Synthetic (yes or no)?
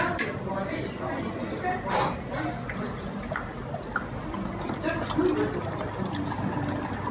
no